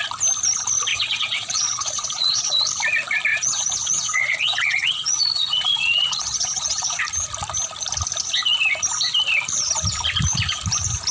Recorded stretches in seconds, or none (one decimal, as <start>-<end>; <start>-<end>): 0.0-0.9; 2.6-3.3; 7.0-11.1